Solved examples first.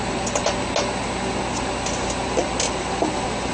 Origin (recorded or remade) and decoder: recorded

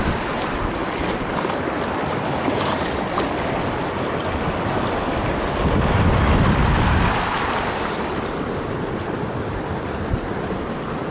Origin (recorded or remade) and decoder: recorded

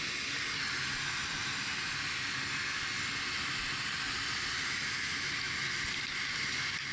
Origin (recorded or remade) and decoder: recorded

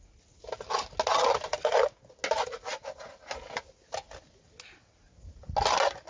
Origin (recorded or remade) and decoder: recorded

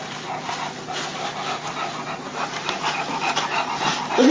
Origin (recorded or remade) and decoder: recorded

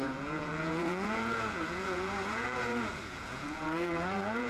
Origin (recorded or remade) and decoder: remade, vocoder, Vocos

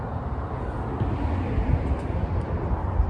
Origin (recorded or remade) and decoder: recorded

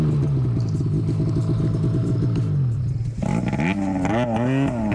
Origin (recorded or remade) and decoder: recorded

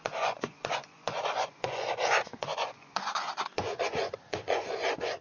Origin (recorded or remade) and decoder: remade, vocoder, Vocos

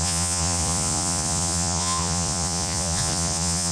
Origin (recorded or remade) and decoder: remade, vocoder, Vocos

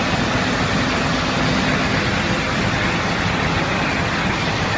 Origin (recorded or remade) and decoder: recorded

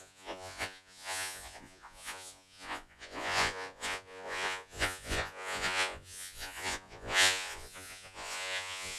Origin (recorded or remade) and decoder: remade, vocoder, Vocos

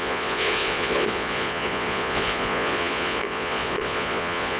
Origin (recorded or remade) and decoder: remade, vocoder, Vocos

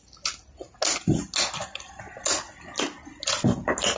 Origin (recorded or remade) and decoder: recorded